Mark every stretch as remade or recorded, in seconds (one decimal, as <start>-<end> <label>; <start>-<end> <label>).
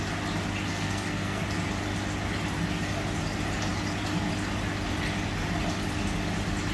0.0-0.7 recorded; 0.7-1.4 remade; 1.4-6.7 recorded